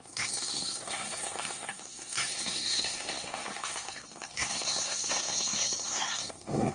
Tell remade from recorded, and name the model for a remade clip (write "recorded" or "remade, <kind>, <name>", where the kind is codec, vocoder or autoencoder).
remade, codec, SNAC